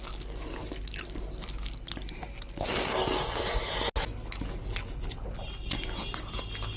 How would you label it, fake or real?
real